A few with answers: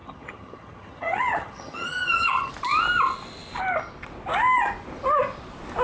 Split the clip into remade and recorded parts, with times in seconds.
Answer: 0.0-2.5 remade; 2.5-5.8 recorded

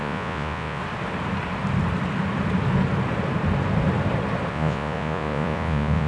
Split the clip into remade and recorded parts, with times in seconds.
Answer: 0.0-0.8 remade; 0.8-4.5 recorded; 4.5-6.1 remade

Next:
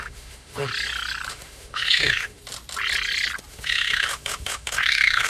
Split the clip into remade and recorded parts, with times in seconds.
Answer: 0.0-0.7 remade; 0.7-1.3 recorded; 1.3-2.4 remade; 2.4-3.5 recorded; 3.5-5.3 remade